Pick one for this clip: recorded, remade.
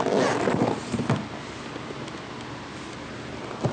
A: recorded